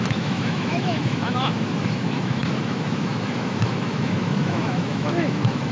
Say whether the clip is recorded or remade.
remade